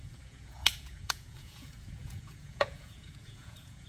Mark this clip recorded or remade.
remade